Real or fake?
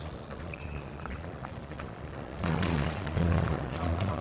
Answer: fake